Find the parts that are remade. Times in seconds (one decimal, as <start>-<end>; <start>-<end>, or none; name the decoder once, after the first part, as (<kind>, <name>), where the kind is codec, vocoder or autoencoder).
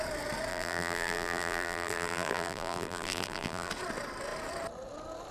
0.5-3.7 (vocoder, BigVGAN v2)